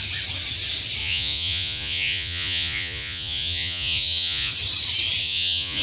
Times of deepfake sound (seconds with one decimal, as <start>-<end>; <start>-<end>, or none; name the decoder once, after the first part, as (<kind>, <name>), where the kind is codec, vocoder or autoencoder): 1.0-4.5 (vocoder, Vocos); 5.2-5.8